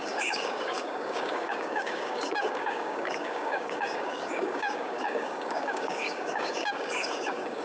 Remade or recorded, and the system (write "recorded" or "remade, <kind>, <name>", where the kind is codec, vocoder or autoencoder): remade, codec, DAC